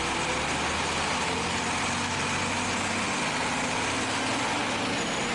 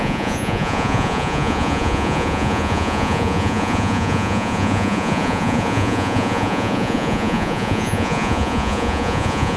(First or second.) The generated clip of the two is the second